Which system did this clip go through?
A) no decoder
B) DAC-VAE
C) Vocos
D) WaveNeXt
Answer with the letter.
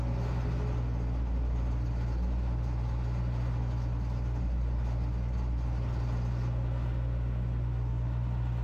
A